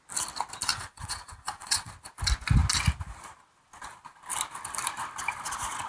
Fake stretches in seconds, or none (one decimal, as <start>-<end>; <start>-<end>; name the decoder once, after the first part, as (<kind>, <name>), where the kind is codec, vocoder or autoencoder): 0.7-1.9 (vocoder, WaveNeXt)